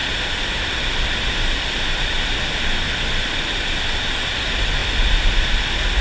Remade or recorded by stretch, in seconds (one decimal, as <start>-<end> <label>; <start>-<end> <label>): 0.0-6.0 recorded